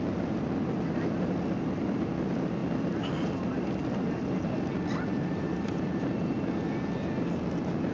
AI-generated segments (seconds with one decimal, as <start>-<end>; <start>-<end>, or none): 5.1-6.2